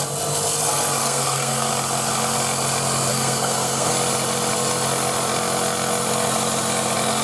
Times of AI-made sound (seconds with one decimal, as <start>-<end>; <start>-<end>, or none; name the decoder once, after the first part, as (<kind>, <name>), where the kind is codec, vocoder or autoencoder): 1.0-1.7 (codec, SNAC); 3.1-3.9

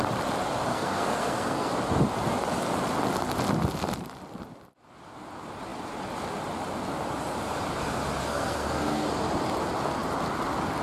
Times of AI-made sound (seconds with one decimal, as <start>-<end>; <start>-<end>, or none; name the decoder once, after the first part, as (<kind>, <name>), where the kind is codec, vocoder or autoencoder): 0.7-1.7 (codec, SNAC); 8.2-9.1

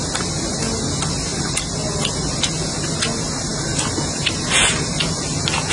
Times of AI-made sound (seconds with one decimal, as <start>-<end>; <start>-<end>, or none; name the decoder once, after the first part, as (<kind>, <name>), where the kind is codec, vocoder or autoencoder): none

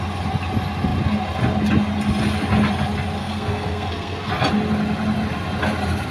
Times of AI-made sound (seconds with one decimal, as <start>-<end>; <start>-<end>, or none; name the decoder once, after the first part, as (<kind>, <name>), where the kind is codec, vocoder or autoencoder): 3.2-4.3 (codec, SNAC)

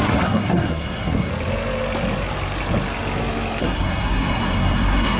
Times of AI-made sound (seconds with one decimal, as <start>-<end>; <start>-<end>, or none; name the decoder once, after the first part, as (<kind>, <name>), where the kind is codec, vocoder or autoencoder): 0.0-1.3 (codec, SNAC); 3.6-5.2

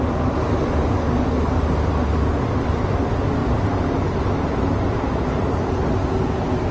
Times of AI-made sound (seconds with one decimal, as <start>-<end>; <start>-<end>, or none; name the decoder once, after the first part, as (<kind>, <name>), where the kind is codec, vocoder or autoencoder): none

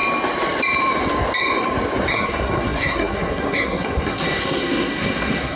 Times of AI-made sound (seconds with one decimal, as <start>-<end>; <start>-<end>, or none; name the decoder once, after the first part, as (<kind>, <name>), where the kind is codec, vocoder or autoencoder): 2.1-5.6 (codec, SNAC)